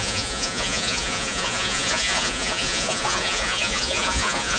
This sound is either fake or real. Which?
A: fake